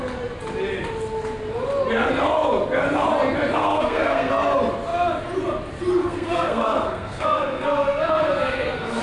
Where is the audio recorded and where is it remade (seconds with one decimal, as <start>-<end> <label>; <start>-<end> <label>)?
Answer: 0.0-3.6 recorded; 3.6-4.3 remade; 4.3-6.0 recorded; 6.0-9.0 remade